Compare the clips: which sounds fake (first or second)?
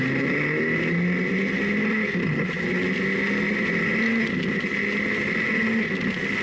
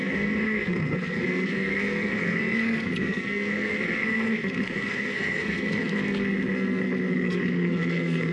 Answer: second